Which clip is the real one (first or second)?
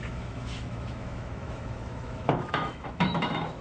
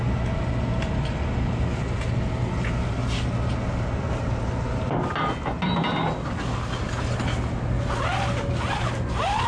second